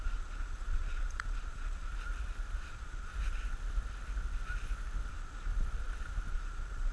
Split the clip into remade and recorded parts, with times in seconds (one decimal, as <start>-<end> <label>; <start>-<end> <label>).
0.0-1.9 remade; 1.9-2.7 recorded; 2.7-3.1 remade; 3.1-5.1 recorded; 5.1-5.5 remade; 5.5-6.3 recorded; 6.3-6.9 remade